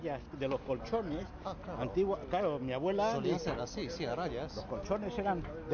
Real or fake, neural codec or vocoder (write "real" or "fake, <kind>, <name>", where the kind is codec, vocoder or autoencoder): real